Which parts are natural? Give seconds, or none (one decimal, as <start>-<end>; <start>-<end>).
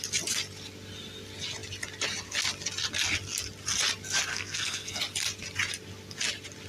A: 0.0-4.3; 5.0-6.7